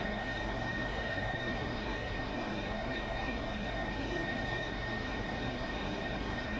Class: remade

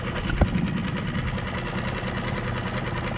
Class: recorded